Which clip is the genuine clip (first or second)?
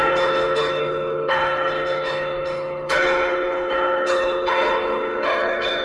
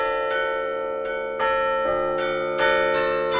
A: second